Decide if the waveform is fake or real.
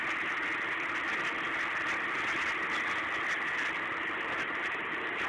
real